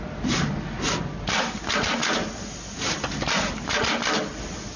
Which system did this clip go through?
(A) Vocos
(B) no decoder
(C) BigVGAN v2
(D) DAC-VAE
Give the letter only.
B